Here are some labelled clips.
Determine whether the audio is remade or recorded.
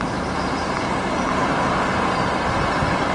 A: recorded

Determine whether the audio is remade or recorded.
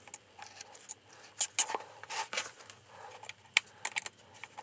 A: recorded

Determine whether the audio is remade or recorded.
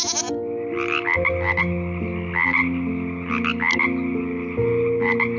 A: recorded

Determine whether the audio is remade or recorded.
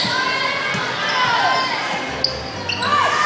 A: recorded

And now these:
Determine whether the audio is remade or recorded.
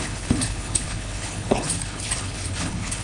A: remade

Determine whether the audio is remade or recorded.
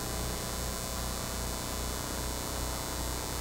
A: recorded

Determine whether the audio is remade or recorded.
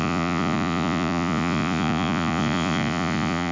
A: remade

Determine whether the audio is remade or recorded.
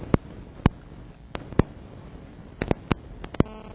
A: recorded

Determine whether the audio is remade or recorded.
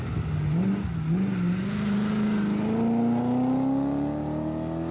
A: recorded